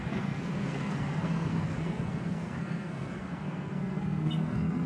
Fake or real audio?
fake